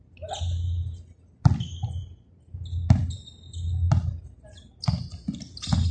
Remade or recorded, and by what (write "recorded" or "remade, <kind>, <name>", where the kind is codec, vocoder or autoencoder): recorded